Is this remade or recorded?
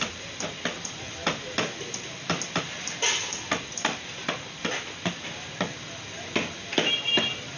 recorded